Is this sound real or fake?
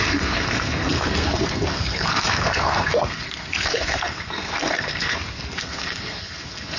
fake